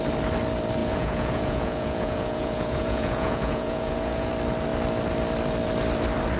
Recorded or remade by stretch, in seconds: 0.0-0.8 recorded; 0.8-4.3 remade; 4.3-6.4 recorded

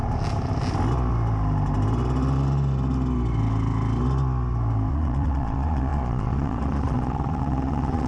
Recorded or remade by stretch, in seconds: 0.0-4.9 recorded; 4.9-8.1 remade

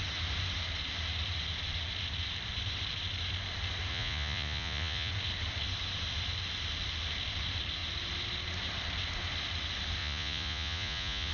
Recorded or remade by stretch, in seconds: 0.0-3.9 recorded; 3.9-5.1 remade; 5.1-10.0 recorded; 10.0-11.3 remade